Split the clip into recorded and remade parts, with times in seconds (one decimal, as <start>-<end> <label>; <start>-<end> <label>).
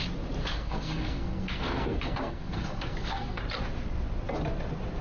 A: 0.0-0.4 recorded; 0.4-3.4 remade; 3.4-5.0 recorded